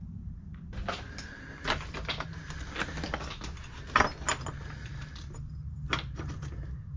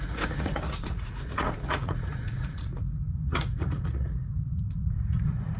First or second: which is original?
first